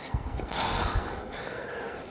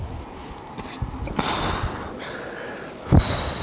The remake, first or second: first